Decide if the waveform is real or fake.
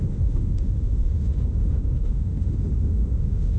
fake